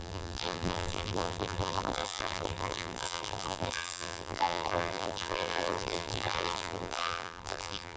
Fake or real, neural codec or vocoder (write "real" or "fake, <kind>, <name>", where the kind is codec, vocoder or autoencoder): fake, vocoder, BigVGAN v2